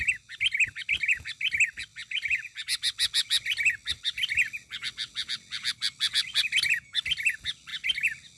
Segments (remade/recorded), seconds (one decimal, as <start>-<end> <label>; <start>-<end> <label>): 0.0-8.4 recorded